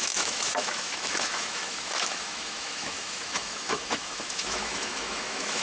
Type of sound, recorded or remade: remade